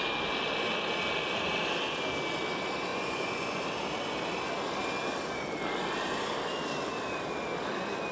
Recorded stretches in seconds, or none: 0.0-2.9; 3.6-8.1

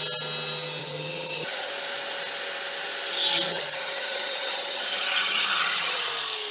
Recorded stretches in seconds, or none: 0.0-0.8; 1.7-3.5; 6.1-6.5

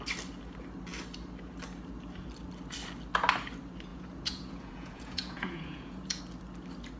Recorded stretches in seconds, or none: 0.0-3.9; 6.2-7.0

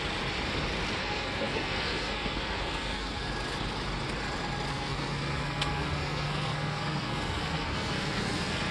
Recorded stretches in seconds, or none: 0.0-1.0; 3.3-4.7

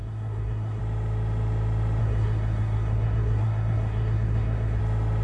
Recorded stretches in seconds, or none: 0.8-2.0; 4.8-5.2

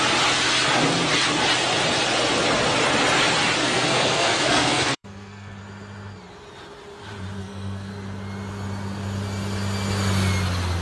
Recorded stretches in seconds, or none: 0.0-3.6; 5.6-7.4; 7.9-10.8

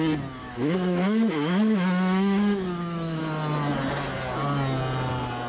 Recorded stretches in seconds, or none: 0.0-0.4; 3.2-5.5

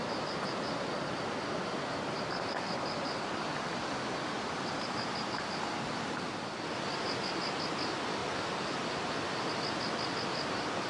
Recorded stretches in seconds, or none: 0.0-8.2; 9.1-10.9